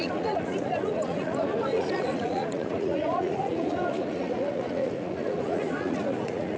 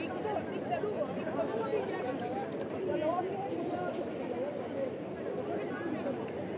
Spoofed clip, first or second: first